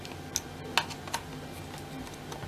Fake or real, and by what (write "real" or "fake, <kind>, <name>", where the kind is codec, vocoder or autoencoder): real